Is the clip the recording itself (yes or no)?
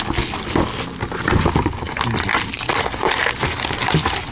yes